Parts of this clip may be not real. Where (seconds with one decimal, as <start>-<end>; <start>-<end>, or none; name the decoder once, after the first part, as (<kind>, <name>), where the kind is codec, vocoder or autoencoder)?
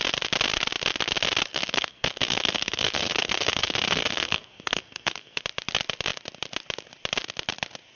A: 1.5-5.4 (codec, SNAC)